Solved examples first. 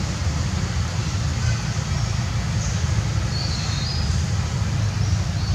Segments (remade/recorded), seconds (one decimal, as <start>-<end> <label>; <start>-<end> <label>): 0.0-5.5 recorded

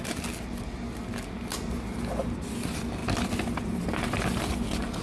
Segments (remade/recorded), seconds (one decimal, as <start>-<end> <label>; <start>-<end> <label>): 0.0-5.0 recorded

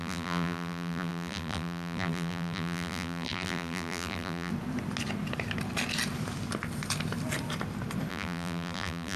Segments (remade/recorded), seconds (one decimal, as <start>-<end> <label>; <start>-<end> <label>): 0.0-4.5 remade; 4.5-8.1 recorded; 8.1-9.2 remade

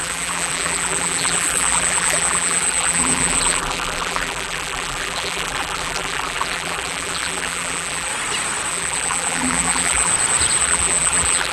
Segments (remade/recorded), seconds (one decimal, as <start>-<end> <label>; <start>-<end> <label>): 0.0-8.1 remade; 8.1-8.7 recorded; 8.7-10.1 remade; 10.1-10.6 recorded; 10.6-11.5 remade

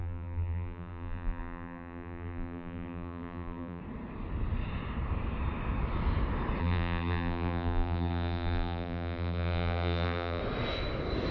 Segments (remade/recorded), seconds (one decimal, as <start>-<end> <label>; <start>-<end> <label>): 0.0-3.8 remade; 3.8-6.6 recorded; 6.6-10.4 remade; 10.4-11.3 recorded